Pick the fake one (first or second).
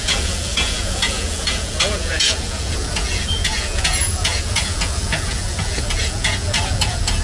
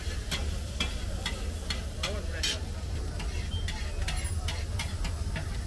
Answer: first